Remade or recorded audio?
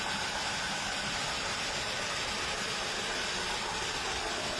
recorded